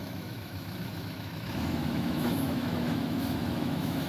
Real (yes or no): no